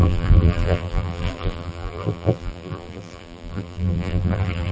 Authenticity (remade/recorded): remade